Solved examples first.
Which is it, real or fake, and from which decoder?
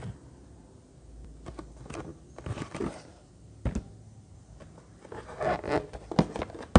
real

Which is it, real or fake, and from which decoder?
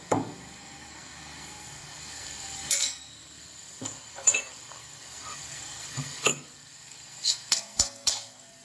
fake, codec, SNAC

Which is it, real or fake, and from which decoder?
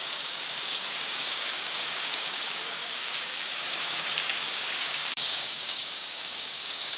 fake, codec, DAC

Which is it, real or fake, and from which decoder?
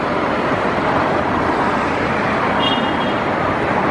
fake, vocoder, BigVGAN v2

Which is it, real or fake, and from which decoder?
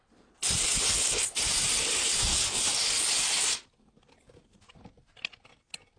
real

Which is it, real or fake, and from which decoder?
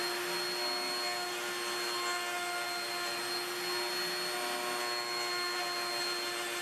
real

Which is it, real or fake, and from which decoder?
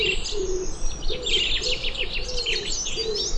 real